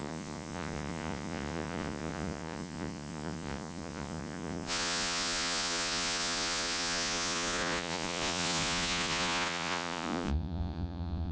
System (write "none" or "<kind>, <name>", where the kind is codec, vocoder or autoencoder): vocoder, Vocos